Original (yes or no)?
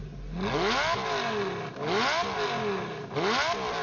yes